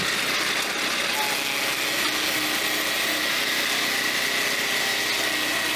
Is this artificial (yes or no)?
no